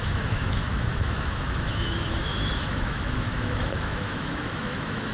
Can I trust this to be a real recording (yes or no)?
no